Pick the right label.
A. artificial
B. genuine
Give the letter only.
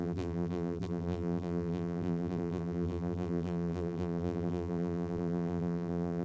A